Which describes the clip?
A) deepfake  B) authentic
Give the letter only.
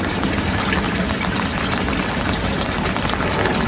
B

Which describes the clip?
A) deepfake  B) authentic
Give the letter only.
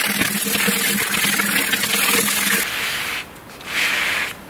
B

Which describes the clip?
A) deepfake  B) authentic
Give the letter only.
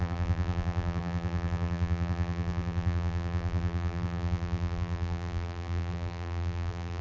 A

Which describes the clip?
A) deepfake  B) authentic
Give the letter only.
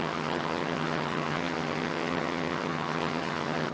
A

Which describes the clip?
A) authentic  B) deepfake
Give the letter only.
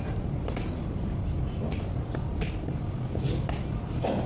B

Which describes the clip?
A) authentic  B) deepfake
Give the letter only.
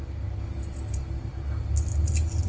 A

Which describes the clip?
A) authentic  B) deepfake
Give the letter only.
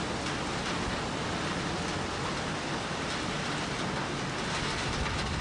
A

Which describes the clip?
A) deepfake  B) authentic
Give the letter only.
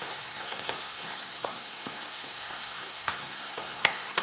A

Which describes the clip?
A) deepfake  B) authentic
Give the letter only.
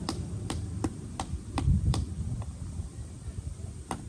A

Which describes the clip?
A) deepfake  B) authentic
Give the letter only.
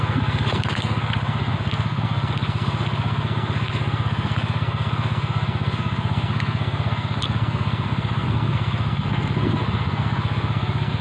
A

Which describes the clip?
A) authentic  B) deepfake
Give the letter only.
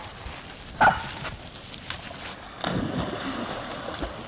A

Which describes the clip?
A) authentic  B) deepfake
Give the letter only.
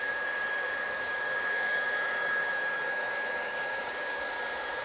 B